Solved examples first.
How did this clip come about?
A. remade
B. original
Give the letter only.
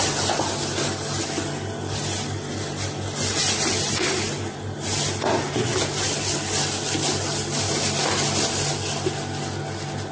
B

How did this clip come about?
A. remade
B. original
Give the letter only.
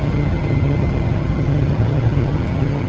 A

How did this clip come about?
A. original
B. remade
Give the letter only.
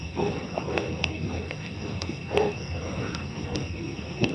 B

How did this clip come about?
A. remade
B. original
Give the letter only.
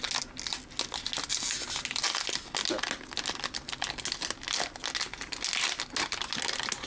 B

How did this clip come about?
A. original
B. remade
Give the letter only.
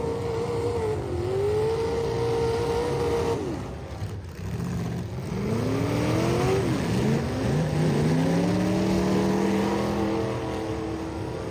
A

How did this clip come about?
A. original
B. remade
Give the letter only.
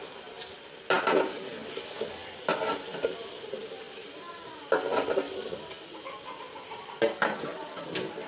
B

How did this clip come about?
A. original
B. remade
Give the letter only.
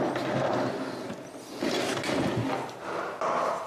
A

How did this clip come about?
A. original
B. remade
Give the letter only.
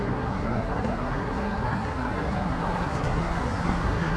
B